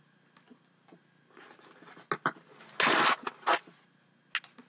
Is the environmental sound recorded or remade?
recorded